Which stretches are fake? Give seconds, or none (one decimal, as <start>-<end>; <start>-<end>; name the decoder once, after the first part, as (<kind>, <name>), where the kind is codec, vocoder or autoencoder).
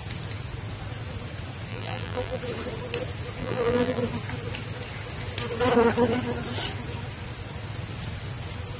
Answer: 1.7-2.4 (vocoder, BigVGAN v2); 3.4-4.0